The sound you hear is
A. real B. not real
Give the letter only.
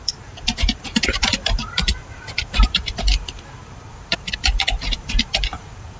B